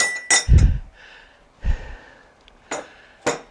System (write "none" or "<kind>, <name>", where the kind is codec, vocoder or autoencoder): none